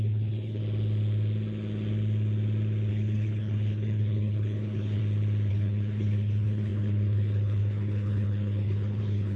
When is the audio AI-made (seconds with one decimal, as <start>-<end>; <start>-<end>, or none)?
0.0-0.6; 2.9-5.0; 5.5-9.4